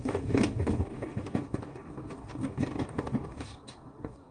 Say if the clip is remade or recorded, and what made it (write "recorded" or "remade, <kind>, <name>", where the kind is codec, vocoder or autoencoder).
remade, codec, DAC